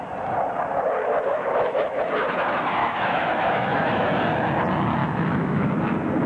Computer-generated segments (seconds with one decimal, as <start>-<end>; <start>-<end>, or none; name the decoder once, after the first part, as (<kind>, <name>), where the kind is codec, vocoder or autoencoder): 1.3-2.0 (autoencoder, DAC-VAE); 2.8-4.1; 5.0-5.7